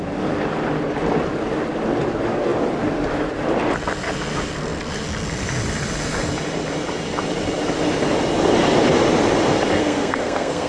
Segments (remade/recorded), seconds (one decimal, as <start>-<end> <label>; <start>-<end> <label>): 0.0-9.8 recorded; 9.8-10.7 remade